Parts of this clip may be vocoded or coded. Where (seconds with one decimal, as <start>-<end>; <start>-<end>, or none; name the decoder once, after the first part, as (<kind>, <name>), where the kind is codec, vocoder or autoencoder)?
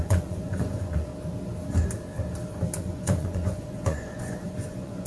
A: 0.0-1.1 (vocoder, Vocos); 2.8-5.1